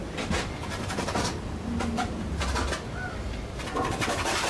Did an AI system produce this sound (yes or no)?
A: yes